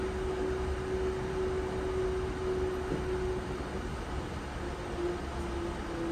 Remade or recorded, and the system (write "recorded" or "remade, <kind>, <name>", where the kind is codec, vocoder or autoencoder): recorded